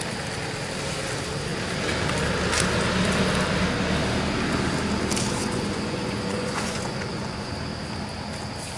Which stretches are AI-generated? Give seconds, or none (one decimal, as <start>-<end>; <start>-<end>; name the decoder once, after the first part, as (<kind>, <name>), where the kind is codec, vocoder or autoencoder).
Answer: 5.4-7.5 (vocoder, Vocos)